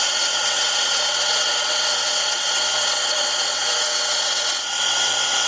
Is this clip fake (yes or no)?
yes